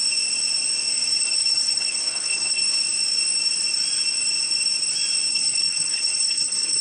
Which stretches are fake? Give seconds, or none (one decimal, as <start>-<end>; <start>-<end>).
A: 1.2-2.6; 5.3-6.8